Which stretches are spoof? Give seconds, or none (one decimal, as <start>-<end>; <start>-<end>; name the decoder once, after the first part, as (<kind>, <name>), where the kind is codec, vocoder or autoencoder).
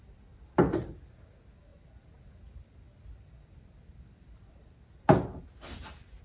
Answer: none